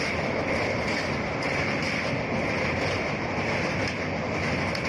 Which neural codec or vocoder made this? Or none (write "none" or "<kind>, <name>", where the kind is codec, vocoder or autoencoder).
none